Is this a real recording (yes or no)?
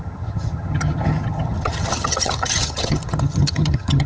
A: no